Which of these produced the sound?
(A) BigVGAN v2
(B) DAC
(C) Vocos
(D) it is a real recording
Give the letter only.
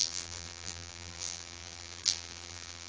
A